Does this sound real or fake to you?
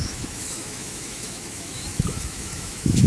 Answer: fake